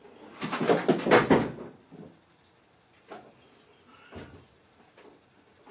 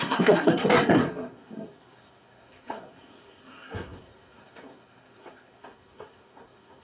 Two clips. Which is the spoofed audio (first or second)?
second